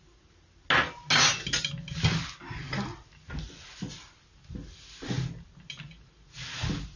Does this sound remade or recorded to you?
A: recorded